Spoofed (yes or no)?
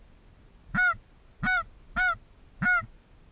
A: no